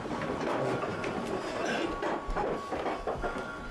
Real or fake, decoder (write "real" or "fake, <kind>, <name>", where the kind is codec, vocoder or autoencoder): real